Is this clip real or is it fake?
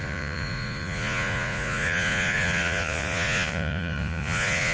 fake